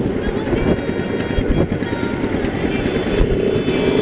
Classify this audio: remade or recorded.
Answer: recorded